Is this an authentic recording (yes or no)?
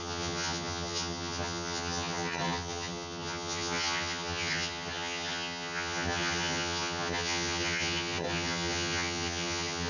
no